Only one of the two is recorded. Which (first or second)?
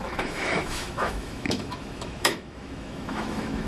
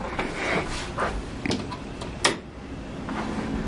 second